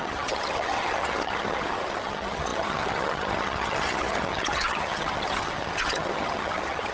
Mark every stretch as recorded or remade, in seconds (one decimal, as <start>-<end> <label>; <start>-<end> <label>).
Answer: 0.0-6.9 remade